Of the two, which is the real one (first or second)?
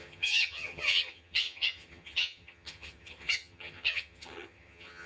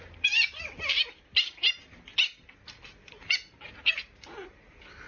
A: second